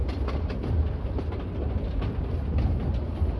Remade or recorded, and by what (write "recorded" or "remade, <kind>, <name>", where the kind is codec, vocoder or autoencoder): recorded